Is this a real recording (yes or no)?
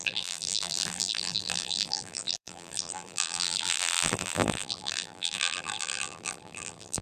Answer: no